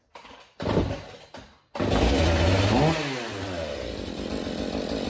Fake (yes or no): no